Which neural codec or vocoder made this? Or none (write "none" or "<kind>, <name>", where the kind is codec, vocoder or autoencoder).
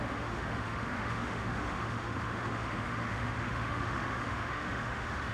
autoencoder, DAC-VAE